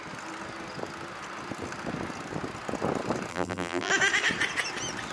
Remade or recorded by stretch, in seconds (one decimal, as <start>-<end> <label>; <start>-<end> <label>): 0.0-3.3 recorded; 3.3-3.9 remade; 3.9-5.1 recorded